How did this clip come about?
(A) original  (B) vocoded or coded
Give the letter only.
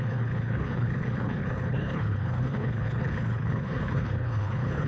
B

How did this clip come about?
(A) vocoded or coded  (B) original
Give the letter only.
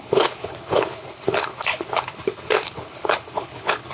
A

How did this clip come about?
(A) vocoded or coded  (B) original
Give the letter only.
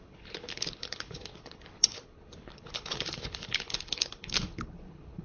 A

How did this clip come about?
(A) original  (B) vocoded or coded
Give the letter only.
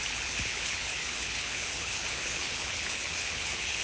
B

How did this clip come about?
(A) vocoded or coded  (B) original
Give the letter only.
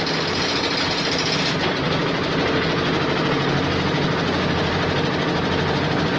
B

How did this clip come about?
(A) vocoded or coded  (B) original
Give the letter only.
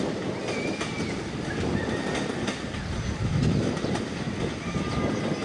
B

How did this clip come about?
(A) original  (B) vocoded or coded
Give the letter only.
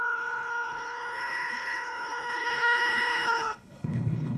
B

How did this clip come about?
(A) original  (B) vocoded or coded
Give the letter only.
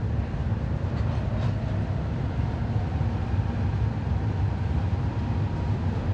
A